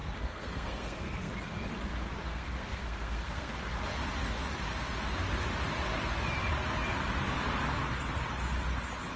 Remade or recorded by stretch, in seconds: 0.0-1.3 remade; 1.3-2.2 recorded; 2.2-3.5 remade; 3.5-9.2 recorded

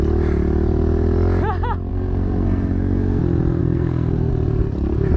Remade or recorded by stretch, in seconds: 0.0-1.9 recorded; 1.9-3.2 remade; 3.2-3.6 recorded; 3.6-4.3 remade; 4.3-5.2 recorded

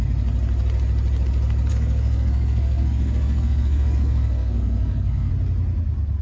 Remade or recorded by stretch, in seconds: 0.0-1.7 recorded; 1.7-5.3 remade; 5.3-6.2 recorded

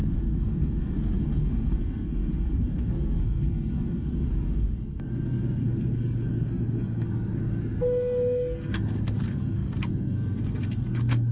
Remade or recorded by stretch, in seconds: 0.0-11.3 remade